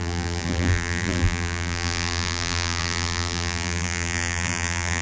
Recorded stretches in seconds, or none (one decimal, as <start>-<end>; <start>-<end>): none